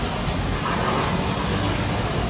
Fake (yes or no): no